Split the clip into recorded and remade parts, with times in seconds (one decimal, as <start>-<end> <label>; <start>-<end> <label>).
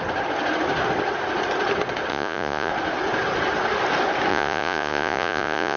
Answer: 0.0-2.1 recorded; 2.1-2.7 remade; 2.7-4.3 recorded; 4.3-5.8 remade